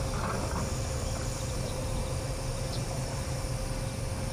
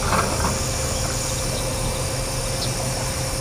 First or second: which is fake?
first